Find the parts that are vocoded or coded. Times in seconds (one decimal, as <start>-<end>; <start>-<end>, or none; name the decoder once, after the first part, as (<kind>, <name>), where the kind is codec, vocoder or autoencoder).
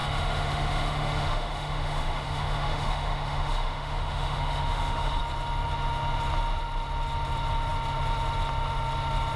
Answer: 0.0-5.2 (autoencoder, DAC-VAE)